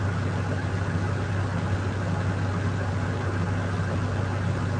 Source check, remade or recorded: recorded